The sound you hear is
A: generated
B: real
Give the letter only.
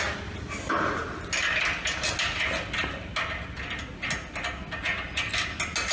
B